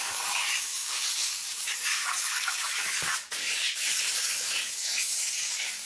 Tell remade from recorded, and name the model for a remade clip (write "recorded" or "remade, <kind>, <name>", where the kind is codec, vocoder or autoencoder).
remade, codec, DAC